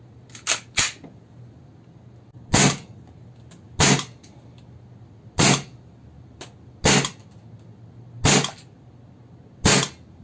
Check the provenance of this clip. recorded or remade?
recorded